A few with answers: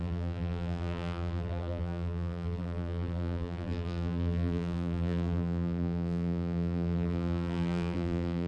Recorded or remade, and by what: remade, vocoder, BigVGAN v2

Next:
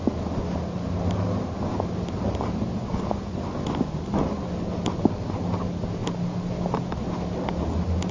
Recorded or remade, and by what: recorded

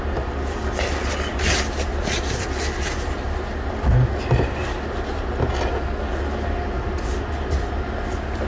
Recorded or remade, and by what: recorded